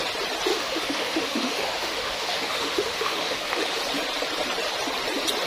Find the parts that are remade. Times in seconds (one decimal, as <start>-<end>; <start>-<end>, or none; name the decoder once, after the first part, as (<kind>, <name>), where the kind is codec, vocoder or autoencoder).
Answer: 0.5-3.8 (autoencoder, DAC-VAE)